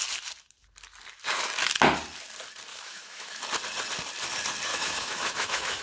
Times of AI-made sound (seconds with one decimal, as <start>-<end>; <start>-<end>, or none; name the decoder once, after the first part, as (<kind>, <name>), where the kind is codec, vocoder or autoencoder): 2.7-3.4 (autoencoder, DAC-VAE); 4.7-5.8